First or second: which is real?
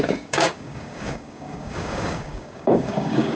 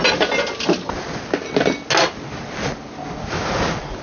second